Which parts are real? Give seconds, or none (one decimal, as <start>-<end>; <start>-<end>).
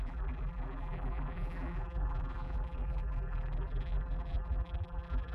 none